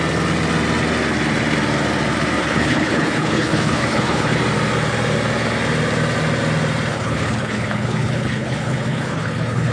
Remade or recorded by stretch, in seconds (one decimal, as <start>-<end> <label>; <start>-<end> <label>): 0.0-2.4 recorded; 2.4-4.4 remade; 4.4-6.9 recorded; 6.9-9.7 remade

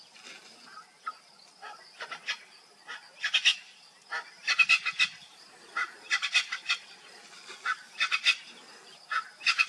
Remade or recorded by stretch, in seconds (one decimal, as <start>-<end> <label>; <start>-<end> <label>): 0.0-9.7 recorded

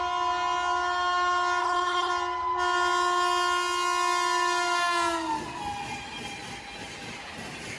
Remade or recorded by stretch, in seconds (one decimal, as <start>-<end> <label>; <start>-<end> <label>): 0.0-1.6 recorded; 1.6-2.1 remade; 2.1-7.8 recorded

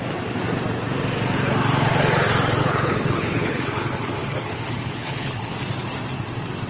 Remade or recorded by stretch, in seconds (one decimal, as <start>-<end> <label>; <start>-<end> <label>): 0.0-2.6 recorded; 2.6-5.5 remade; 5.5-6.7 recorded

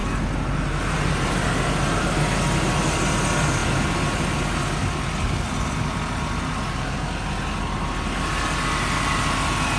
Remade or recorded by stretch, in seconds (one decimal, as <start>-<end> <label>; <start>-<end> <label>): 0.0-9.8 recorded

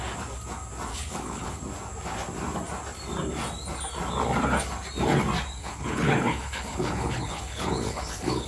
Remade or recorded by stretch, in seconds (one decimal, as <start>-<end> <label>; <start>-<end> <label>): 0.0-0.9 recorded; 0.9-1.6 remade; 1.6-5.6 recorded; 5.6-8.5 remade

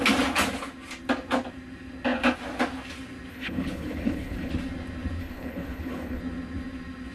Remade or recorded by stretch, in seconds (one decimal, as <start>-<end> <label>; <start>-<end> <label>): 0.0-3.3 recorded; 3.3-4.5 remade; 4.5-5.2 recorded; 5.2-6.2 remade; 6.2-7.1 recorded